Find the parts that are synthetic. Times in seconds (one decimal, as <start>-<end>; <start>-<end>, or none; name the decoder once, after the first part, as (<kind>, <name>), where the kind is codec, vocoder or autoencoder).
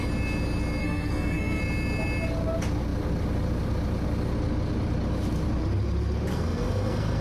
0.8-1.6 (codec, SNAC); 6.3-7.2